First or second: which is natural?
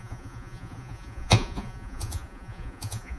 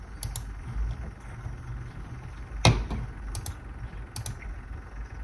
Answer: second